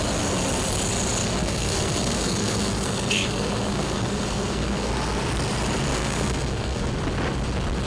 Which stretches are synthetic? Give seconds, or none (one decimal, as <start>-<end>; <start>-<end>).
1.4-4.9; 5.9-6.9